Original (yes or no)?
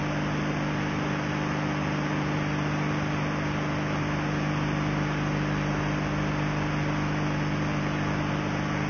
yes